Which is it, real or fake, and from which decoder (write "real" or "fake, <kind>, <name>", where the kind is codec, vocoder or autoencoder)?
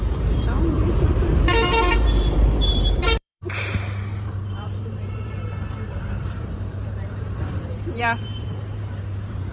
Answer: fake, vocoder, BigVGAN v2